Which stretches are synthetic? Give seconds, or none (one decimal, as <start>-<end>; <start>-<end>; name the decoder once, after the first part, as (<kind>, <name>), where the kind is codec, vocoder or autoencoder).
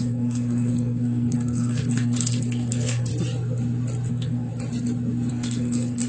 0.0-3.1 (codec, SNAC); 4.1-4.5; 5.3-6.1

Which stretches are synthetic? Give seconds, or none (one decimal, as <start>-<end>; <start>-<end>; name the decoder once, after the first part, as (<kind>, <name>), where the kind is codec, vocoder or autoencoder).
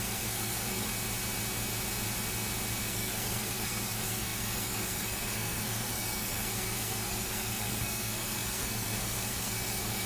0.0-0.9 (codec, SNAC); 2.8-10.1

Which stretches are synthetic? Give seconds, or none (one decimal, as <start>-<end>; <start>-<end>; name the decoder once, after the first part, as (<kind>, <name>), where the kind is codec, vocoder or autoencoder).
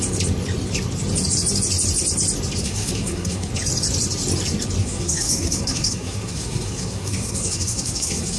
2.6-3.5 (codec, SNAC); 4.8-8.4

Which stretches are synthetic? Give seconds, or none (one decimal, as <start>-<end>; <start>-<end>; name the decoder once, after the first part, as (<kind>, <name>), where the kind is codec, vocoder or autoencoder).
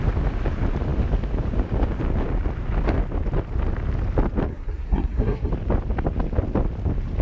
4.5-5.5 (codec, SNAC)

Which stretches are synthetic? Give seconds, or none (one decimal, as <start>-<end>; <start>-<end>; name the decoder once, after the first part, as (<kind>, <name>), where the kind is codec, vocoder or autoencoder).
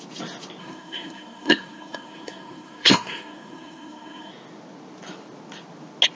0.6-4.3 (codec, SNAC)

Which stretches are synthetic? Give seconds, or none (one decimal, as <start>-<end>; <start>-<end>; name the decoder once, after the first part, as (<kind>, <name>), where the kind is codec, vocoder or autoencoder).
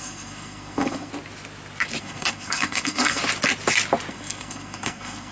0.0-1.1 (codec, SNAC); 2.0-3.2; 4.1-5.3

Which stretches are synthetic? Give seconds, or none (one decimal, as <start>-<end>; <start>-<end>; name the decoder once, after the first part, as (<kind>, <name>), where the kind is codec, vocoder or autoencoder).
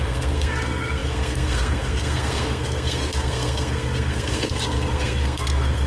0.0-5.9 (codec, SNAC)